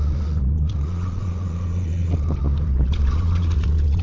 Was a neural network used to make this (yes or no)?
yes